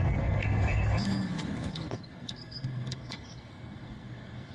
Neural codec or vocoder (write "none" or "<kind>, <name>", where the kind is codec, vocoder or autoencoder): codec, SNAC